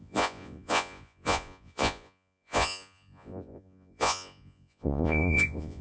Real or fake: fake